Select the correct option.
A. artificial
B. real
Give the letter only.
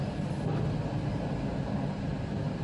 B